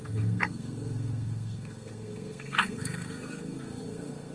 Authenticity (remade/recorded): remade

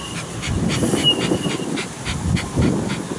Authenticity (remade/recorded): recorded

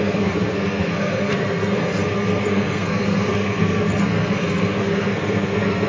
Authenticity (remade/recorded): remade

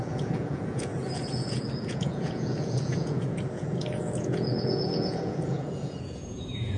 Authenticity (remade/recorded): remade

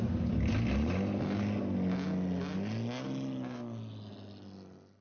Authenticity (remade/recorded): recorded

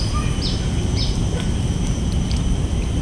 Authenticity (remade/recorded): recorded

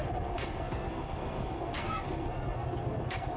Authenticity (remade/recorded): remade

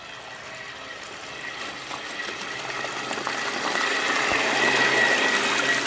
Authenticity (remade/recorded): recorded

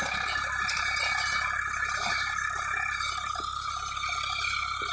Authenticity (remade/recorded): recorded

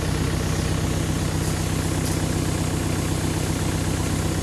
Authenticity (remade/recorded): recorded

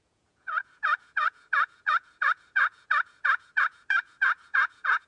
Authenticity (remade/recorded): remade